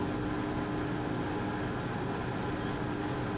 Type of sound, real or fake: real